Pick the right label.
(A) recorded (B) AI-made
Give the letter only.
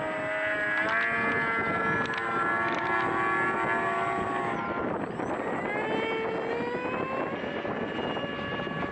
A